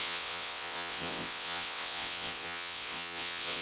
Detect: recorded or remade remade